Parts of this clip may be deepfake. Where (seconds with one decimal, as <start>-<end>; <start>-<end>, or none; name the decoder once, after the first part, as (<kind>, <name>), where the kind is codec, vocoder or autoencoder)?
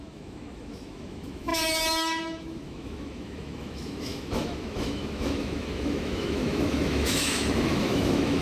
0.0-8.4 (autoencoder, DAC-VAE)